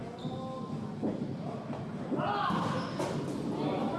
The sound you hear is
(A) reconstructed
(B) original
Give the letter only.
B